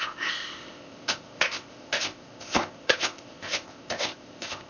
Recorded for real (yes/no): no